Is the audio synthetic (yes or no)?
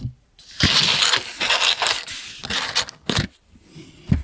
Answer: no